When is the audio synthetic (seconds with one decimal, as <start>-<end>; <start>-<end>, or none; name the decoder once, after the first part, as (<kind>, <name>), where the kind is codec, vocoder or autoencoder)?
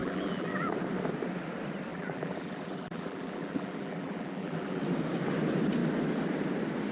0.0-0.7 (vocoder, BigVGAN v2); 1.9-4.8